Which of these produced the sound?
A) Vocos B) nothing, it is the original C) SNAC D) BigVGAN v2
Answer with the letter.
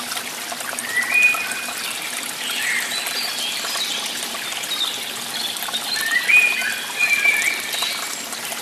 B